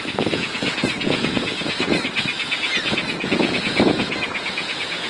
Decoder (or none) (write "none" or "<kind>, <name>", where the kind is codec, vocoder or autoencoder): vocoder, Vocos